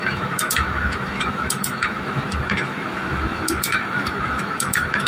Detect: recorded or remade remade